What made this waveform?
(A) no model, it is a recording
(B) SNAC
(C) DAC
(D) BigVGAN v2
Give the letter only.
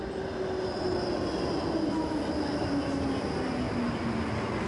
A